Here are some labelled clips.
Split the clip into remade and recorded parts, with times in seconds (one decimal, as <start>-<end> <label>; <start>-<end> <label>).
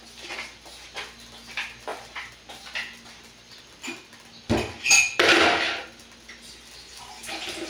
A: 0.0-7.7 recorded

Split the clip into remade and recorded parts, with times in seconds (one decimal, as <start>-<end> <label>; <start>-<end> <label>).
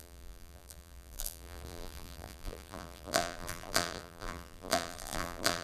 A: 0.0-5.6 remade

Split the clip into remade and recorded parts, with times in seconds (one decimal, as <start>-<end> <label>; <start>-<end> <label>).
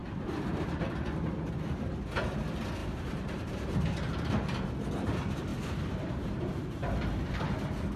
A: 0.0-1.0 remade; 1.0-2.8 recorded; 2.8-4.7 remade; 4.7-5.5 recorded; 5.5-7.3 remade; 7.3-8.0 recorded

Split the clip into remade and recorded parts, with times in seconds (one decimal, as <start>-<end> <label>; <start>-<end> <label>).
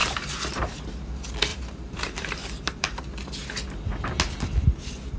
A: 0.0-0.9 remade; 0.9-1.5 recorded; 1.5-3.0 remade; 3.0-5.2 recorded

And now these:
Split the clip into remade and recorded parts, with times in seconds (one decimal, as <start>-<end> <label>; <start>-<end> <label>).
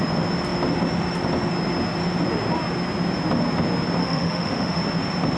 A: 0.0-4.0 recorded; 4.0-4.8 remade; 4.8-5.4 recorded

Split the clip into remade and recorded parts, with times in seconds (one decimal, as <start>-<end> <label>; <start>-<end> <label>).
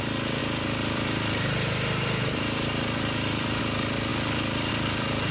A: 0.0-5.3 remade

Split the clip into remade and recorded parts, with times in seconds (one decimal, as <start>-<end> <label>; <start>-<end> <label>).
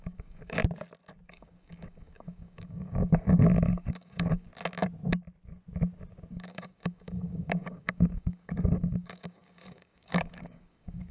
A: 0.0-0.6 remade; 0.6-1.3 recorded; 1.3-4.5 remade; 4.5-6.3 recorded; 6.3-11.1 remade